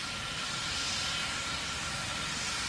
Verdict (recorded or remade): recorded